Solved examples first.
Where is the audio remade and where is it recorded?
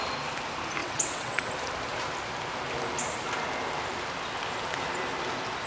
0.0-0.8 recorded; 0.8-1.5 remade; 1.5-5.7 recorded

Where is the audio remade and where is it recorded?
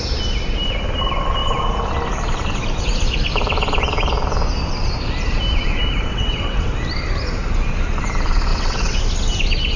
0.0-6.1 recorded; 6.1-6.7 remade; 6.7-8.5 recorded; 8.5-9.0 remade; 9.0-9.8 recorded